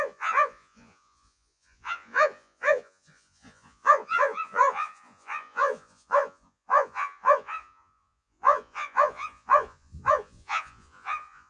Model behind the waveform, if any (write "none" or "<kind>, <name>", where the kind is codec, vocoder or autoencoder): vocoder, Vocos